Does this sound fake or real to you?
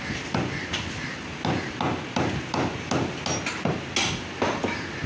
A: real